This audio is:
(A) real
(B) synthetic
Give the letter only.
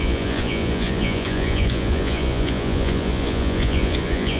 B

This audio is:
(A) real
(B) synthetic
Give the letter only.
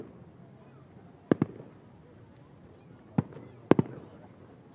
A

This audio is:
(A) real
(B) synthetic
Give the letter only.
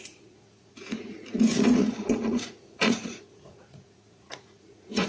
B